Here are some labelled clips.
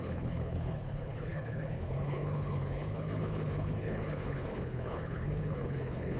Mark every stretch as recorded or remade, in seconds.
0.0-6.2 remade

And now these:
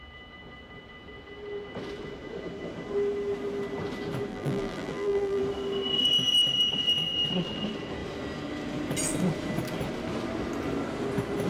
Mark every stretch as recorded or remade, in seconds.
0.0-4.3 recorded; 4.3-5.4 remade; 5.4-11.5 recorded

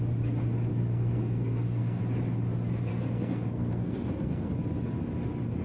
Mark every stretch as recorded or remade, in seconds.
0.0-0.7 recorded; 0.7-2.0 remade; 2.0-2.9 recorded; 2.9-4.5 remade; 4.5-5.6 recorded

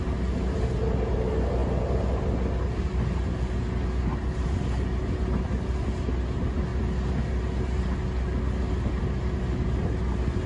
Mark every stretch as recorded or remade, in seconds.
0.0-10.5 recorded

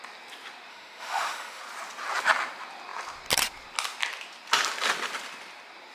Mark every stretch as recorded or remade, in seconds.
0.0-0.7 recorded; 0.7-1.6 remade; 1.6-5.9 recorded

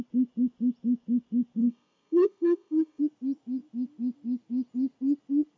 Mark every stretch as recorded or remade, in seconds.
0.0-1.6 recorded; 1.6-3.0 remade; 3.0-5.6 recorded

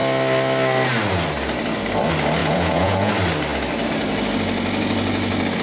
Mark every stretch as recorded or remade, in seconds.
0.0-2.4 recorded; 2.4-3.1 remade; 3.1-5.6 recorded

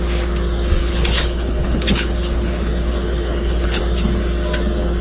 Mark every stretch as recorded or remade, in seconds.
0.0-0.8 recorded; 0.8-3.8 remade; 3.8-5.0 recorded